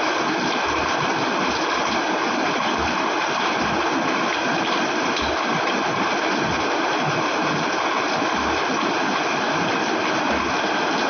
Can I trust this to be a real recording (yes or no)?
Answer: yes